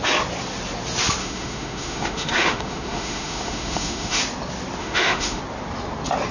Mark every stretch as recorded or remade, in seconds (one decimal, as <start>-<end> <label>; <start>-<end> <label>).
0.0-1.2 recorded; 1.2-4.2 remade; 4.2-4.8 recorded; 4.8-5.4 remade; 5.4-6.3 recorded

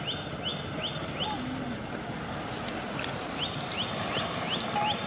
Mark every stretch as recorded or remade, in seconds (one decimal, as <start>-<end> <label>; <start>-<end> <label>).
0.0-5.1 recorded

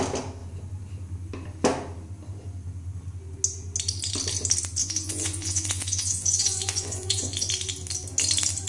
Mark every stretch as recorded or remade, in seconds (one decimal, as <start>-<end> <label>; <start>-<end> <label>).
0.0-4.8 recorded; 4.8-7.5 remade; 7.5-8.7 recorded

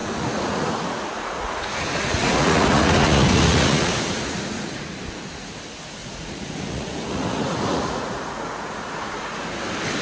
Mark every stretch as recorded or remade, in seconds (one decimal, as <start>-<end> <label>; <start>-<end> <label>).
0.0-5.0 remade; 5.0-6.0 recorded; 6.0-9.6 remade; 9.6-10.0 recorded